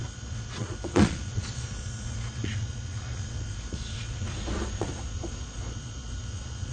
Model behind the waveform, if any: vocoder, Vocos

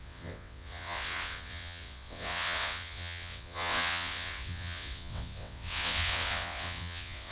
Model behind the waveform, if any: vocoder, WaveNeXt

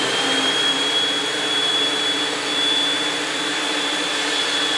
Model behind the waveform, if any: vocoder, BigVGAN v2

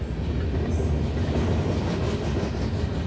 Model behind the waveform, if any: none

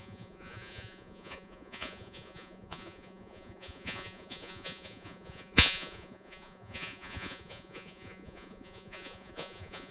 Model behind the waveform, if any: vocoder, Vocos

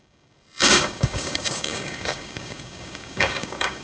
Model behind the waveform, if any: codec, DAC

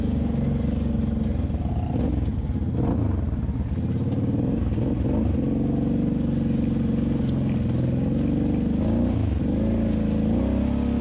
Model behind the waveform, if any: none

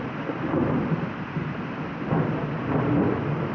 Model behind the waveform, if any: none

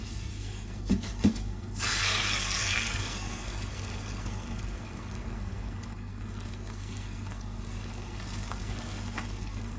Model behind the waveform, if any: codec, SNAC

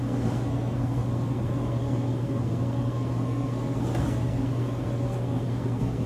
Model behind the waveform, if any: codec, SNAC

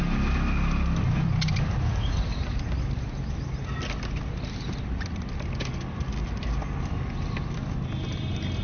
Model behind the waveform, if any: none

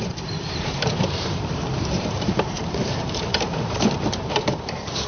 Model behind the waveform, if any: vocoder, BigVGAN v2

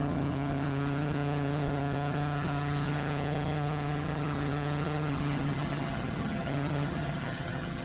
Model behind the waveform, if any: vocoder, HiFi-GAN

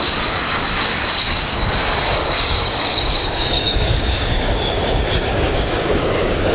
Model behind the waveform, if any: codec, DAC